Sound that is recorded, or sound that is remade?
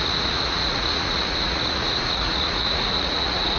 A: remade